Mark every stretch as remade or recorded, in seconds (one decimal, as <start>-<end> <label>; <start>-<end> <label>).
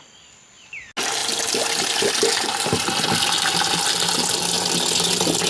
0.0-5.5 recorded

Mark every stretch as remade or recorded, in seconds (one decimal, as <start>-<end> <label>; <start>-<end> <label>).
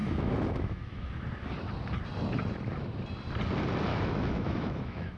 0.0-1.1 remade; 1.1-3.9 recorded; 3.9-5.2 remade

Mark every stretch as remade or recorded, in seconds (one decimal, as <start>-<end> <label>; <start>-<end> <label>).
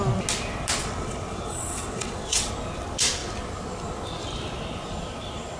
0.0-0.8 recorded; 0.8-2.5 remade; 2.5-5.6 recorded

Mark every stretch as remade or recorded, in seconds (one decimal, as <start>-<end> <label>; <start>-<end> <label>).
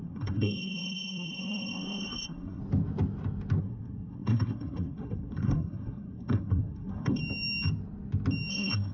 0.0-2.6 remade; 2.6-3.6 recorded; 3.6-7.2 remade; 7.2-8.5 recorded; 8.5-8.9 remade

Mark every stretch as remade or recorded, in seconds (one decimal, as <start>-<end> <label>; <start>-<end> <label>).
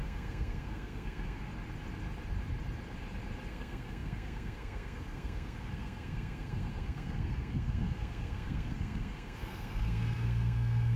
0.0-1.5 remade; 1.5-3.5 recorded; 3.5-11.0 remade